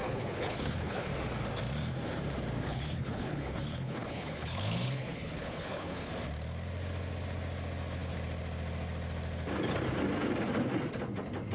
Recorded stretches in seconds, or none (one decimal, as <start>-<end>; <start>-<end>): 1.1-2.7; 6.1-11.5